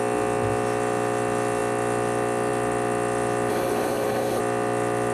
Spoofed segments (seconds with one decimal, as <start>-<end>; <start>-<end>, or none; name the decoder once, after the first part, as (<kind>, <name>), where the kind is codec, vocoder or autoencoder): 3.5-4.4 (codec, HILCodec)